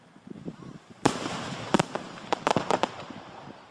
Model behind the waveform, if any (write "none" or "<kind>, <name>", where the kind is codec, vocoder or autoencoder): vocoder, BigVGAN v2